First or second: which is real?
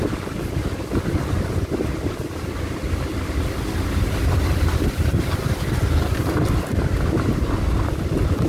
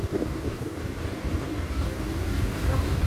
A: first